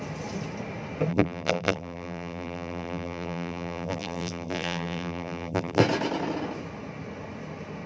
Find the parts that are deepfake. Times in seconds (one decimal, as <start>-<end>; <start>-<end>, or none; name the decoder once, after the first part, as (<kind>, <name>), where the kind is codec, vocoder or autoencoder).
1.1-5.8 (vocoder, BigVGAN v2)